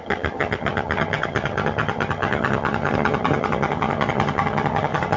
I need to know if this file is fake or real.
fake